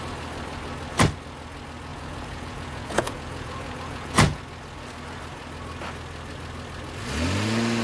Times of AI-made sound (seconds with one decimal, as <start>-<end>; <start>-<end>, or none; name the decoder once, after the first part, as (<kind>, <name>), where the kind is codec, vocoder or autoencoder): 1.9-4.4 (vocoder, Vocos)